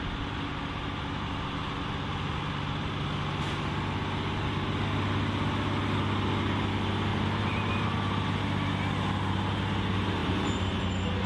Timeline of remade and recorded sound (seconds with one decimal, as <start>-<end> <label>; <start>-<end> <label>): 0.0-7.1 recorded; 7.1-8.4 remade; 8.4-10.2 recorded; 10.2-10.8 remade; 10.8-11.3 recorded